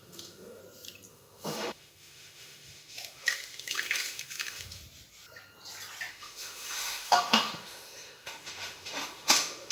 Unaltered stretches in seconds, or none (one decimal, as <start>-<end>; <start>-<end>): 0.6-1.1; 4.8-6.1